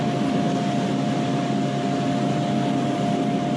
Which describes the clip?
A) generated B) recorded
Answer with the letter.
B